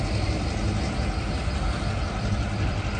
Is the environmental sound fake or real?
real